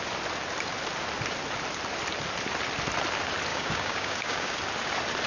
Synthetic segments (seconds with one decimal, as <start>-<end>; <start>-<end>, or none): 3.5-4.6